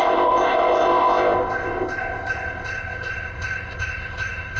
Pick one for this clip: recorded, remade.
remade